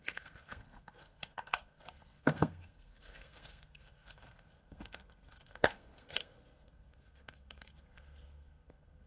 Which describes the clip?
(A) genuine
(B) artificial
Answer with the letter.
B